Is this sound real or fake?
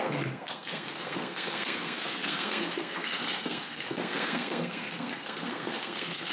fake